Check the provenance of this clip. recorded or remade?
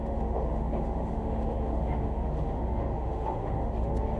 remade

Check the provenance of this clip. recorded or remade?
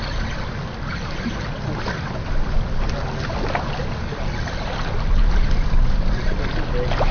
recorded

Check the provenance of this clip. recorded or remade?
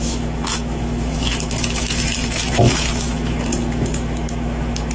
remade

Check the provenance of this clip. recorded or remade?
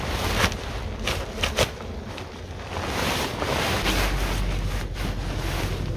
recorded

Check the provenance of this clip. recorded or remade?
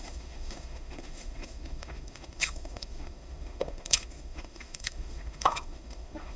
remade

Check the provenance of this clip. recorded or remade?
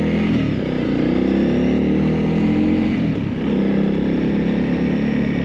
recorded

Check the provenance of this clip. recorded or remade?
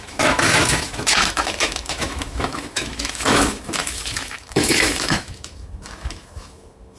remade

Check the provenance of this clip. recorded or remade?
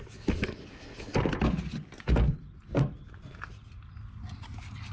recorded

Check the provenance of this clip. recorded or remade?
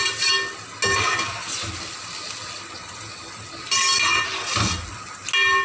recorded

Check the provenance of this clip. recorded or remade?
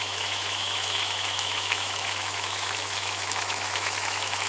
remade